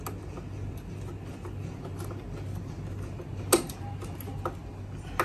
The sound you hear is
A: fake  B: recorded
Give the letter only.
B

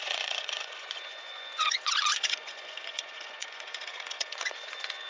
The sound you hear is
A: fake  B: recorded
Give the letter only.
A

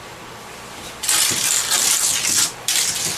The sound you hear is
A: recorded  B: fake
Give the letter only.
A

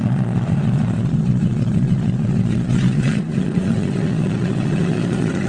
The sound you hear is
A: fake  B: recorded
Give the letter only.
A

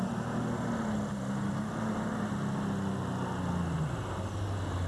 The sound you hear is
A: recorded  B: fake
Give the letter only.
A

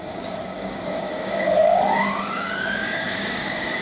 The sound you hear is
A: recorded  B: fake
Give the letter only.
B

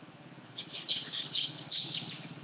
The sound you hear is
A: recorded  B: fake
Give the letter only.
B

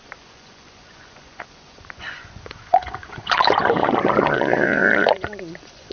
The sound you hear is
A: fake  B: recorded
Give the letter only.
A